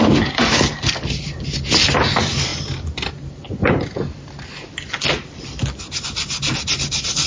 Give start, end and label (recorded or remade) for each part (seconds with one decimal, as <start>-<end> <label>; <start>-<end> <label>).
0.0-7.3 recorded